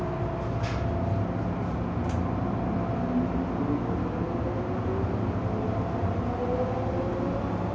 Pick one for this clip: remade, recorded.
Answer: recorded